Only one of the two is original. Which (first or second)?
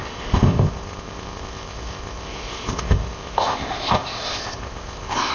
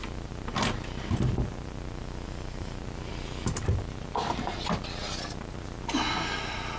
second